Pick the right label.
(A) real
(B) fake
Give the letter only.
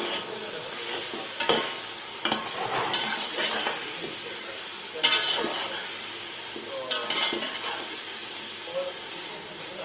A